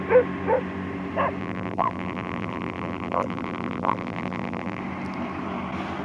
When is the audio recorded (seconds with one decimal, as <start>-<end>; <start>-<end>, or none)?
0.0-1.4; 4.8-6.0